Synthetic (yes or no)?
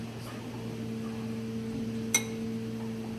no